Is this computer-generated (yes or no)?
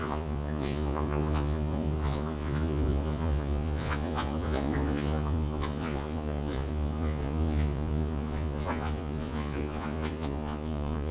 yes